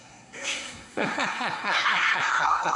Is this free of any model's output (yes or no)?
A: no